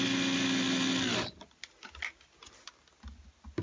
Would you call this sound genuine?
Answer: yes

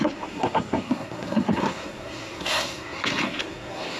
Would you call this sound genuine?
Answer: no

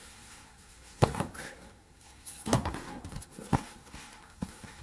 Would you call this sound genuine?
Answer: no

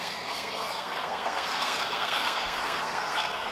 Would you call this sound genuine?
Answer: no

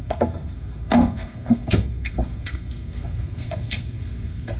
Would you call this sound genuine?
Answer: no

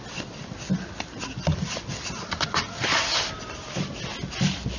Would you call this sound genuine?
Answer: yes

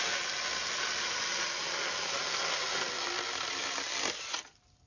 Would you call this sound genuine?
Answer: yes